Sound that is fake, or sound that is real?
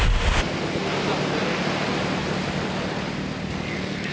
real